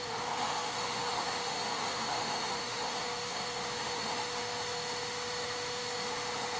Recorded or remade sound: remade